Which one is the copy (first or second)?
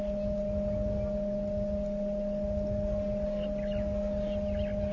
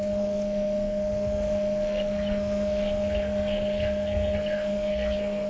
second